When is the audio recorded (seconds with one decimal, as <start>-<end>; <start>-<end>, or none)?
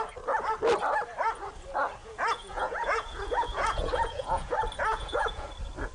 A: 0.0-2.0; 4.5-4.9; 5.5-5.9